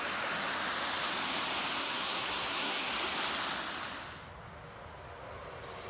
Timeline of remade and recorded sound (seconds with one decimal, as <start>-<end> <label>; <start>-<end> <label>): 0.0-1.8 recorded; 1.8-2.9 remade; 2.9-5.9 recorded